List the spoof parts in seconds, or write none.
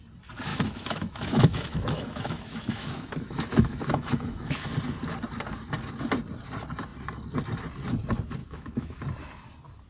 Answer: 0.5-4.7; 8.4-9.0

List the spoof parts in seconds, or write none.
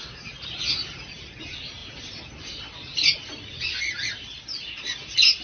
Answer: none